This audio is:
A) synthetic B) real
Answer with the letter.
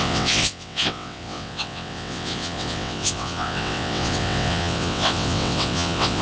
A